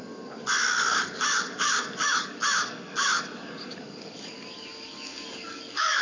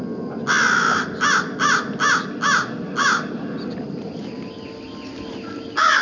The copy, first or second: first